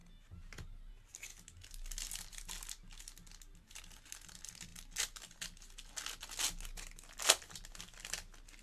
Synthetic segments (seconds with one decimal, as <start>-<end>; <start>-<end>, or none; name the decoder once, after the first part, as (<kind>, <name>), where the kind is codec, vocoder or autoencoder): none